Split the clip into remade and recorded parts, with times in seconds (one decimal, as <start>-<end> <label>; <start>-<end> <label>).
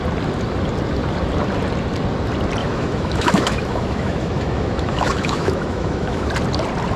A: 0.0-2.6 recorded; 2.6-6.3 remade; 6.3-7.0 recorded